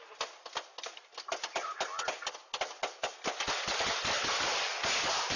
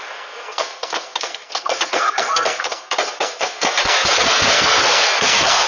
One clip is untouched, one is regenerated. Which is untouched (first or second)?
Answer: first